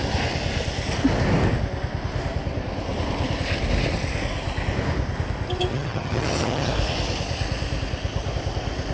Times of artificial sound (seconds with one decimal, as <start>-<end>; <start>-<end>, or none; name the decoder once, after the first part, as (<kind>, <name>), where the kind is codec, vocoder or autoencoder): 5.7-6.7 (vocoder, HiFi-GAN)